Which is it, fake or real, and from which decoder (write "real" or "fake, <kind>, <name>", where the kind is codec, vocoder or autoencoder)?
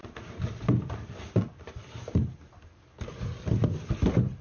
real